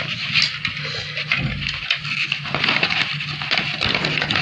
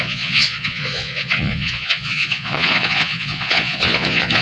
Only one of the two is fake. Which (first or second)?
second